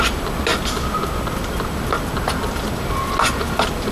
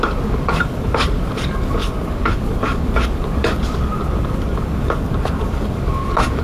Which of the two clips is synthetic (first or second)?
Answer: second